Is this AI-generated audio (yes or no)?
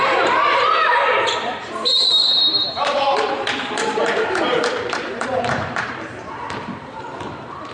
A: yes